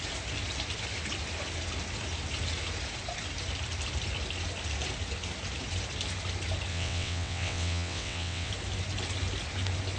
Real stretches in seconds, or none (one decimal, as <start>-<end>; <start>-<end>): 0.0-6.7; 8.5-10.0

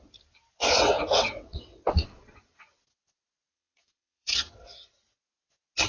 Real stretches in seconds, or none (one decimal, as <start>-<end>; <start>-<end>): 0.0-0.8; 2.8-3.5; 4.9-5.9